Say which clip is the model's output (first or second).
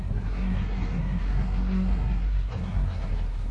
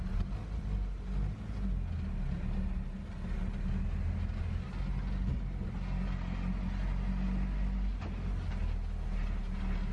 first